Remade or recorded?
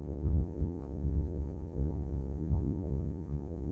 remade